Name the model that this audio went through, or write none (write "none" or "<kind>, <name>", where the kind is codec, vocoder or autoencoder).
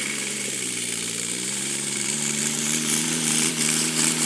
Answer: vocoder, BigVGAN v2